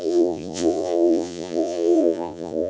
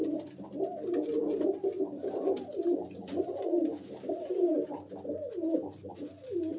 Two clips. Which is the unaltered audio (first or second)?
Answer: second